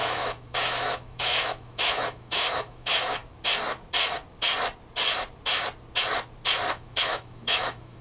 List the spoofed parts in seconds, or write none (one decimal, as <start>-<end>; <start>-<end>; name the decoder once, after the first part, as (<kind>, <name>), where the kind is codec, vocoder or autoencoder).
0.0-3.2 (autoencoder, DAC-VAE); 6.7-8.0